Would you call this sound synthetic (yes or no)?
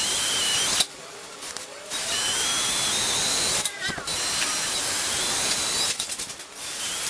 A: no